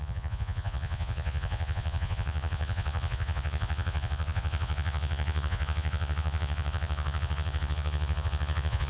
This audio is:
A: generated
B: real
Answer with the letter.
A